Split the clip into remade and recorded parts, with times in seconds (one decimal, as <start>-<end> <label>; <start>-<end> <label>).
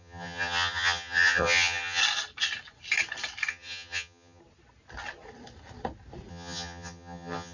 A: 0.0-2.0 remade; 2.0-3.5 recorded; 3.5-4.4 remade; 4.4-6.3 recorded; 6.3-7.5 remade